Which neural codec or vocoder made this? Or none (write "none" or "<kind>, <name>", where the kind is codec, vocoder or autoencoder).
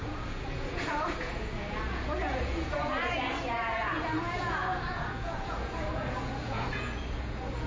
vocoder, Vocos